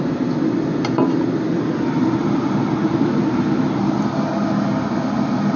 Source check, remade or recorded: recorded